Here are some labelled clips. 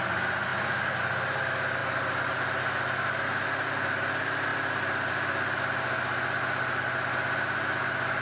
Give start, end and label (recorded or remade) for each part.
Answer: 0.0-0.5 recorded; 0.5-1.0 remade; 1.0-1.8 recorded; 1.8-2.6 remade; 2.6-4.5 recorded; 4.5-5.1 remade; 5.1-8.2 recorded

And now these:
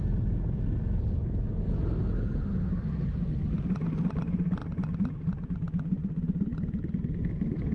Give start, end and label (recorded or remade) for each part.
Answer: 0.0-1.7 remade; 1.7-7.7 recorded

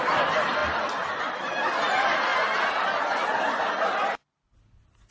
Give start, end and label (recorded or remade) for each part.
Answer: 0.0-5.1 recorded

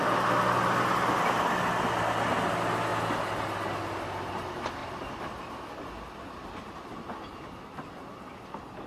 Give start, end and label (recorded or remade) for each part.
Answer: 0.0-8.9 recorded

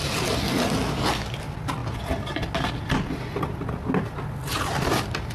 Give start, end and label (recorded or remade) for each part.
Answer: 0.0-5.3 recorded

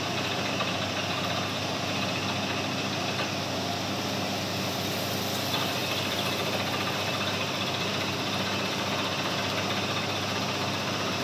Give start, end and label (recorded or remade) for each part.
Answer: 0.0-11.2 recorded

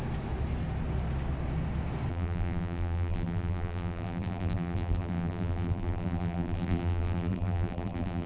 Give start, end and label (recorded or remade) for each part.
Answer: 0.0-2.1 recorded; 2.1-8.3 remade

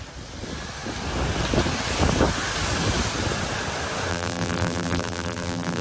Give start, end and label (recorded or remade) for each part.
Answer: 0.0-4.1 recorded; 4.1-5.8 remade